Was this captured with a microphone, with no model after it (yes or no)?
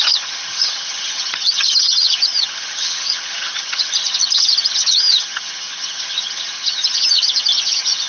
no